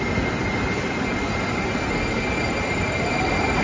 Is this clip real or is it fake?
real